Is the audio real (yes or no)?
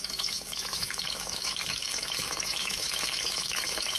no